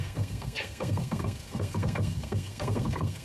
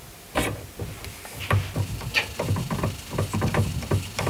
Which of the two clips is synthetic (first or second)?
first